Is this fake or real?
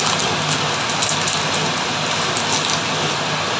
real